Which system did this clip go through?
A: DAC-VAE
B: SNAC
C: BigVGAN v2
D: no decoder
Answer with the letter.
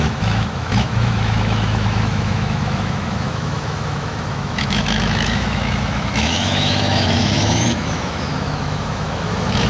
A